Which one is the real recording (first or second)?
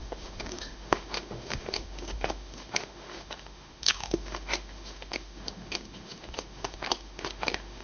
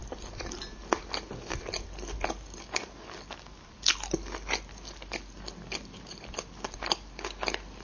second